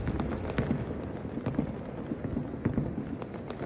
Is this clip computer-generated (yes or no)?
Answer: no